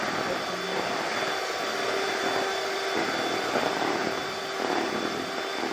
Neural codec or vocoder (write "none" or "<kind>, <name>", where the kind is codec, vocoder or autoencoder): none